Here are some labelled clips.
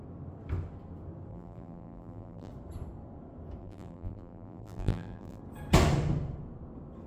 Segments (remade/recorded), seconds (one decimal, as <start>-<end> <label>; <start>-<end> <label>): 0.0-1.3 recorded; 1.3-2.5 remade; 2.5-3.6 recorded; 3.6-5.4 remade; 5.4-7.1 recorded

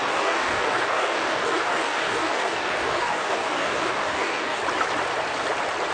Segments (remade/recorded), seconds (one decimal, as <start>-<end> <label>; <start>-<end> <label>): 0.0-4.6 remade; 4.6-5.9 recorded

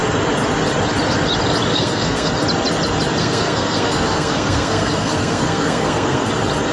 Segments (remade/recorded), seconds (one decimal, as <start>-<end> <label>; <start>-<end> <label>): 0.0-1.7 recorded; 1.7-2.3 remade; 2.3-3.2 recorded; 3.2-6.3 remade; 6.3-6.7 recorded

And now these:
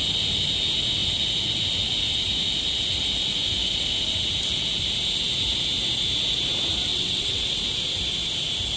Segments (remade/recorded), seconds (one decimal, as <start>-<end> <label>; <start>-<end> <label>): 0.0-6.9 recorded; 6.9-7.6 remade; 7.6-8.8 recorded

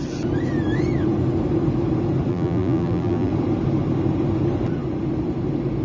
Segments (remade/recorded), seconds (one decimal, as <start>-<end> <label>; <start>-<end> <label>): 0.0-2.3 recorded; 2.3-3.3 remade; 3.3-5.8 recorded